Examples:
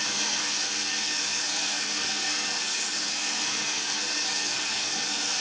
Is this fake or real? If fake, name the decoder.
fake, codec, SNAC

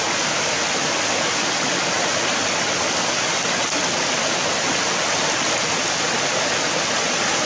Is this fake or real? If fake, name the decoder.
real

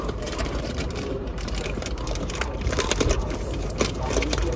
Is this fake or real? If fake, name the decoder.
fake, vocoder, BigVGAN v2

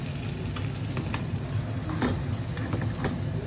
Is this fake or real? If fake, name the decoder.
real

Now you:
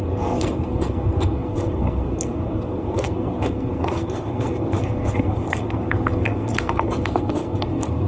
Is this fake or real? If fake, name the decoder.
fake, codec, SNAC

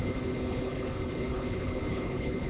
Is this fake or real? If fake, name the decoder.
fake, codec, HILCodec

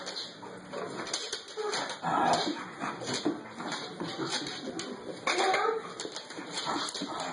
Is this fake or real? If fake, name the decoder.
real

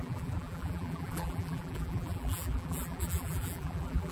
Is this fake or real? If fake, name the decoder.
fake, vocoder, BigVGAN v2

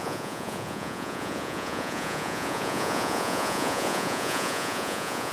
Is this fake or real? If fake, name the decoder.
fake, vocoder, Vocos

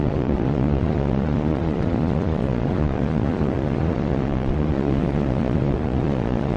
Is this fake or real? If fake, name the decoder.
fake, vocoder, Vocos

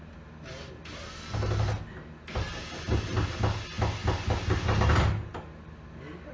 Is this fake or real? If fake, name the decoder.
real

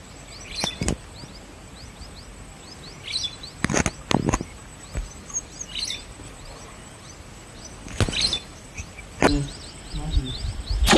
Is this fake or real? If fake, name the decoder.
real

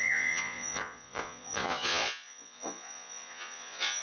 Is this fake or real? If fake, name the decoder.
fake, vocoder, Vocos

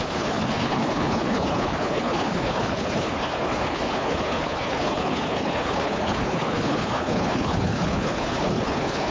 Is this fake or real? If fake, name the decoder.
fake, codec, HILCodec